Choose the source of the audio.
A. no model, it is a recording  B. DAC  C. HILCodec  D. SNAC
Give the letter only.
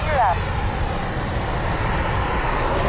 A